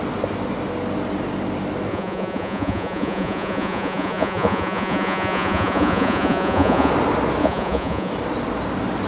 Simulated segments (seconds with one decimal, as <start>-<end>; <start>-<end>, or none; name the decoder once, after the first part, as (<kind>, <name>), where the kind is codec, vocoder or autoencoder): 1.9-6.9 (vocoder, Vocos); 7.4-8.1